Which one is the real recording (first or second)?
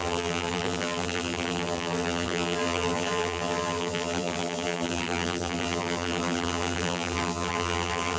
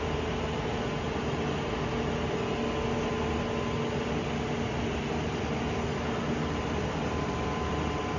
second